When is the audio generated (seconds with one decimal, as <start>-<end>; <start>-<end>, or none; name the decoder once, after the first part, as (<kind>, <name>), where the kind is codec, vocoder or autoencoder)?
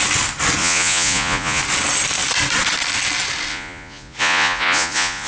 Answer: 0.6-1.6 (vocoder, Vocos); 3.5-5.3